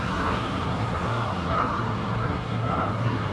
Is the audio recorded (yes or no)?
no